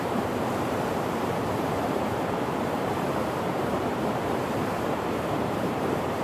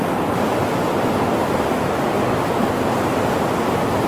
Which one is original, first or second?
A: second